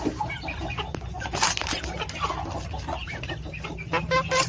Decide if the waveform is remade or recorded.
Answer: recorded